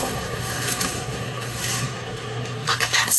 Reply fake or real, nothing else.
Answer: fake